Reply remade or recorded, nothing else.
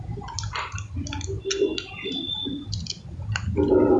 recorded